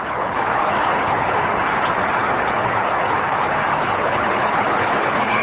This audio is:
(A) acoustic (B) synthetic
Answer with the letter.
B